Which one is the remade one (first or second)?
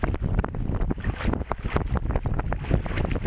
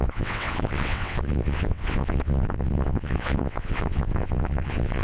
second